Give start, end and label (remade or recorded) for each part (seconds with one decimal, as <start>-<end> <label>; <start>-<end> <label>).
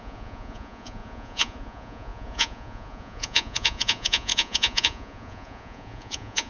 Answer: 0.0-6.5 remade